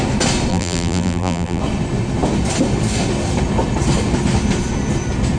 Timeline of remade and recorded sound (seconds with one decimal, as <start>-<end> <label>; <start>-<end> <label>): 0.0-0.5 recorded; 0.5-1.6 remade; 1.6-5.4 recorded